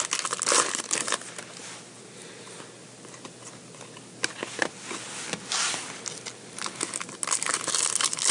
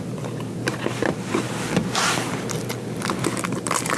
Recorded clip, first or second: first